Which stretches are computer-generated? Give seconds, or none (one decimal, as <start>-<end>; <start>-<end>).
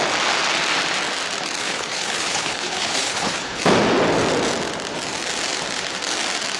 1.6-3.6